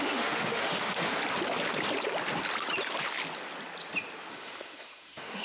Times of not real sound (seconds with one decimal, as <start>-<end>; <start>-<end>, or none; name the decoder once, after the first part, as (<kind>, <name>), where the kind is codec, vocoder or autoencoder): 0.0-1.1 (autoencoder, DAC-VAE); 4.3-5.4